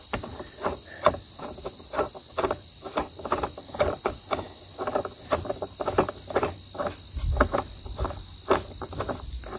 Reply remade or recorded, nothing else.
recorded